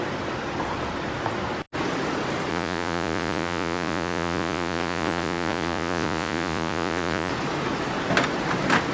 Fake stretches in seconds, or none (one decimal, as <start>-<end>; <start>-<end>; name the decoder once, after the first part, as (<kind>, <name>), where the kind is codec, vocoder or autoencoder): 2.5-7.3 (vocoder, Vocos)